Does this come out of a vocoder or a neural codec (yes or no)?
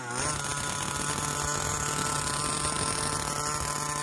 no